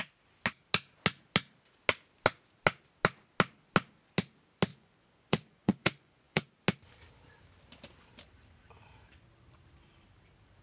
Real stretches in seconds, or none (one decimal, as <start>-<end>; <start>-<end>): 0.0-4.7; 6.5-10.6